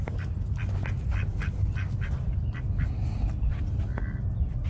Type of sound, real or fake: real